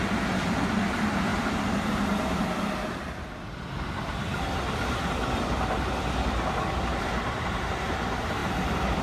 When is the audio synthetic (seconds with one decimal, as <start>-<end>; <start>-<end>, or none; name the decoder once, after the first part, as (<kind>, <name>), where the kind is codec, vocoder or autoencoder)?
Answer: 6.9-7.5 (vocoder, BigVGAN v2)